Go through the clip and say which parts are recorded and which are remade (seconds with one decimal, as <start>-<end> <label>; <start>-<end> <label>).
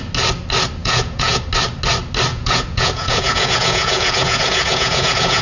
0.0-0.8 recorded; 0.8-1.4 remade; 1.4-2.3 recorded; 2.3-5.4 remade